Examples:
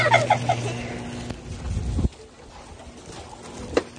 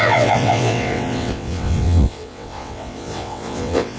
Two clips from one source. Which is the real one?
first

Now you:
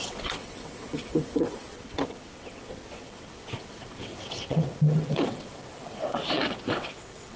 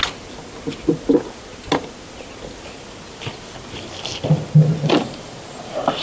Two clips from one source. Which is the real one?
second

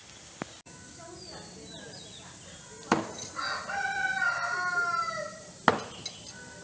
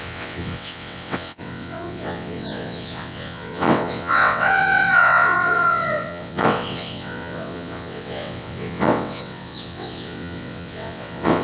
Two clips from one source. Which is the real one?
first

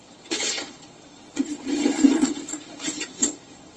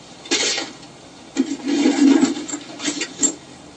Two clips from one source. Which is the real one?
second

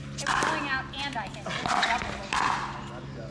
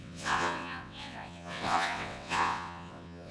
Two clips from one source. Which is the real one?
first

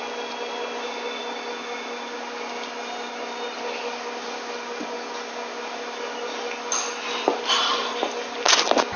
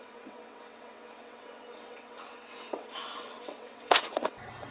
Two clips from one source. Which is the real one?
first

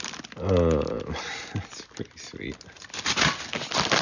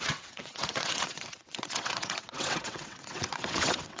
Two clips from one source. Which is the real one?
first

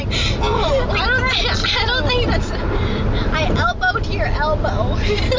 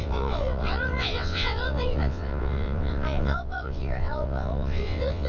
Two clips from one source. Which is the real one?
first